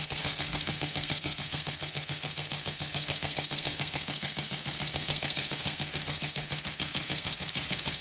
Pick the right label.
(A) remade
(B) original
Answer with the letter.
A